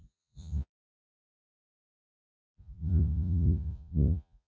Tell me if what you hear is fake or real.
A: fake